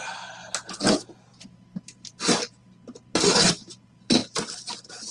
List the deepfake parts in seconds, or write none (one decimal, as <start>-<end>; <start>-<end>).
none